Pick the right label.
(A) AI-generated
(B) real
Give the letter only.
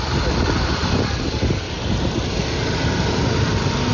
B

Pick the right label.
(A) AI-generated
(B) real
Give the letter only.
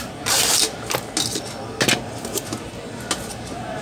B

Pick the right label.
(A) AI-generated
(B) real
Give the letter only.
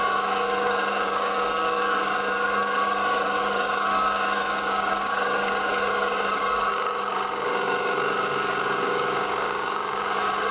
A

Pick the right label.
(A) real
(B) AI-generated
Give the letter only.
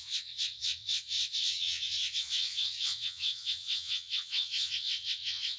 B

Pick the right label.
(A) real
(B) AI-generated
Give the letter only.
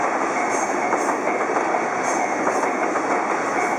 A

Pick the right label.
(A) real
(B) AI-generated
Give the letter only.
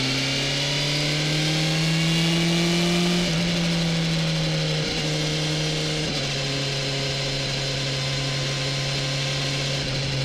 A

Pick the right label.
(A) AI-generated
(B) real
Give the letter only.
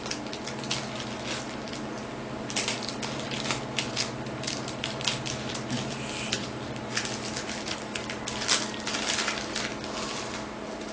B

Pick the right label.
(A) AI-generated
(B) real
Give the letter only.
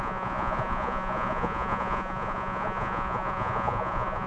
A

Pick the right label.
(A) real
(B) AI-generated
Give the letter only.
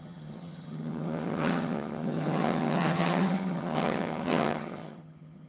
B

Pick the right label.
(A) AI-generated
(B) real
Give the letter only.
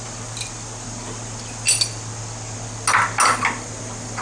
B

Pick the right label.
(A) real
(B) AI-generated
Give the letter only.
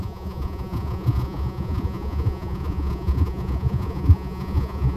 B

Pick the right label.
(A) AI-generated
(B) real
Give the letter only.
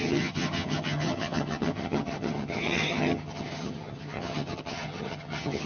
A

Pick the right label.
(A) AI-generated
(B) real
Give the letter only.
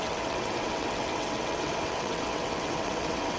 A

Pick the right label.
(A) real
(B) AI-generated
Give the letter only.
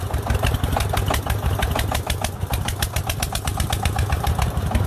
A